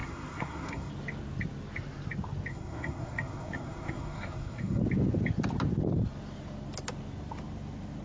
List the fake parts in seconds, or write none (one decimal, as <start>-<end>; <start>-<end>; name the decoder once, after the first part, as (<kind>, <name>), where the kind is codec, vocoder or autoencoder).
0.0-0.9 (codec, SNAC); 2.5-4.8